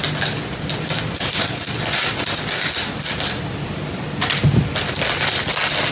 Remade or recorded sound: recorded